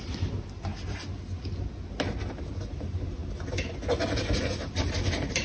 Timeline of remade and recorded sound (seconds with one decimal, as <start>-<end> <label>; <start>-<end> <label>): 0.0-0.7 remade; 0.7-2.7 recorded; 2.7-3.2 remade; 3.2-4.4 recorded; 4.4-5.4 remade